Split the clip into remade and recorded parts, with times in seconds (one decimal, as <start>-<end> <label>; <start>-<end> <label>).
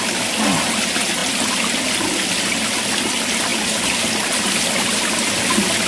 0.0-5.9 recorded